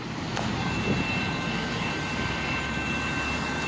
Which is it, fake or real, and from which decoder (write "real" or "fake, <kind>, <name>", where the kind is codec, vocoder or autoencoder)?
real